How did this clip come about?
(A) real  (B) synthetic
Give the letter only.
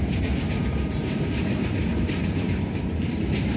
B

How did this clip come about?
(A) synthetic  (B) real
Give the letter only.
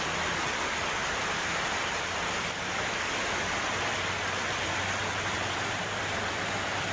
A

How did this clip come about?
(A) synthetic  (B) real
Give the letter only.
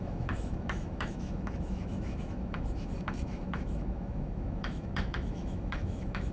A